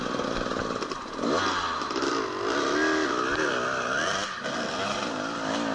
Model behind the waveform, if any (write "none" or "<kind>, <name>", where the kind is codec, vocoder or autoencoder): none